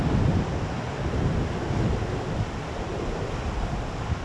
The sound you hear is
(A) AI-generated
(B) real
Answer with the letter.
B